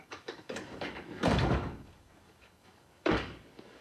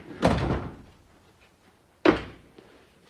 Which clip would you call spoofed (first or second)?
first